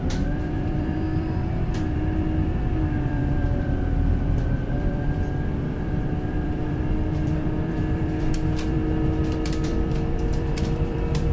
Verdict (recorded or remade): remade